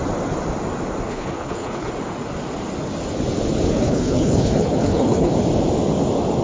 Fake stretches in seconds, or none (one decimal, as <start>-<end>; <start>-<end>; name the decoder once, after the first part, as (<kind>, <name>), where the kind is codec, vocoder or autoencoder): 1.1-1.9 (codec, HILCodec); 3.7-5.3